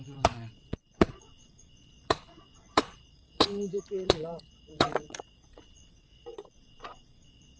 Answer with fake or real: fake